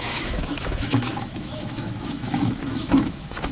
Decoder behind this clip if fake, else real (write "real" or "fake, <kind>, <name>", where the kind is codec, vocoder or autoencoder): fake, autoencoder, DAC-VAE